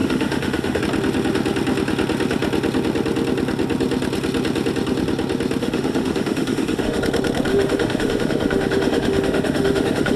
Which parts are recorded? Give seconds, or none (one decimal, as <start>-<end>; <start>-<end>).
0.8-5.6; 7.0-7.5